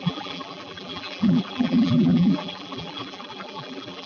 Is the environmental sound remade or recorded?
remade